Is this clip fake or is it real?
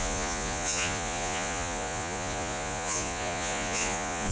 fake